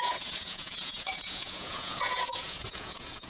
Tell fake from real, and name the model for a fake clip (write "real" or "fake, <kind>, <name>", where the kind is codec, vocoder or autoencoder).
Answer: fake, vocoder, Vocos